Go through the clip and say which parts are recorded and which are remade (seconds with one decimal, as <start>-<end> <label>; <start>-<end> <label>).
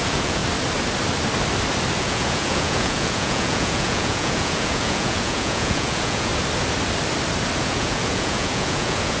0.0-0.4 remade; 0.4-2.0 recorded; 2.0-6.3 remade; 6.3-7.6 recorded; 7.6-9.2 remade